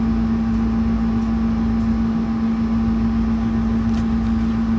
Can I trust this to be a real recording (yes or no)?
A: yes